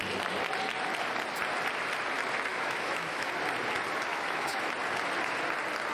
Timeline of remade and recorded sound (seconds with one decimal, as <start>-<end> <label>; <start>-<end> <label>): 0.0-2.5 recorded; 2.5-3.3 remade; 3.3-4.1 recorded; 4.1-4.7 remade; 4.7-5.9 recorded